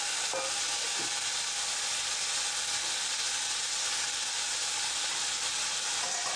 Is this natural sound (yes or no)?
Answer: yes